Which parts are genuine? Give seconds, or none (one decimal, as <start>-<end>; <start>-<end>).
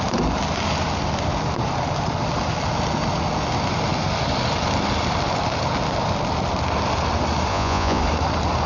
0.0-7.5; 8.0-8.7